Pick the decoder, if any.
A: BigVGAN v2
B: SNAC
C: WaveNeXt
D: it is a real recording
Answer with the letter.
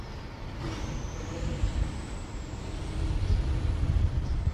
A